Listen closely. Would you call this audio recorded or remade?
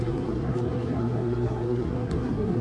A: remade